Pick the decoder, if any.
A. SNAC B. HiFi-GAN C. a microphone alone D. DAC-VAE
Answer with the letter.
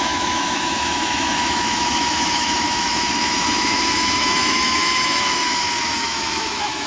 D